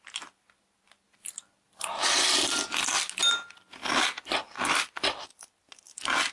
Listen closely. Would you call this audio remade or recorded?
recorded